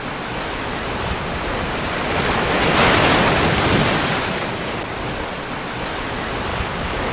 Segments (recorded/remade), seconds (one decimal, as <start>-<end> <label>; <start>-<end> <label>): 0.0-6.5 recorded; 6.5-7.1 remade